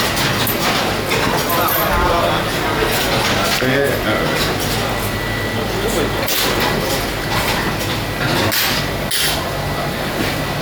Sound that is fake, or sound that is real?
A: real